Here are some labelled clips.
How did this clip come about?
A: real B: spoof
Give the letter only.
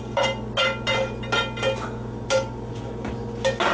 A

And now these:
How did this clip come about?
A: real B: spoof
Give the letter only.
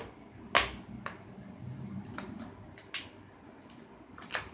A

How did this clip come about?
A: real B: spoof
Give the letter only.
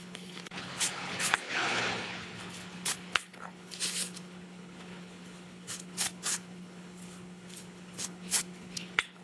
B